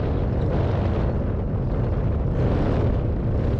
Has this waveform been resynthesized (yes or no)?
no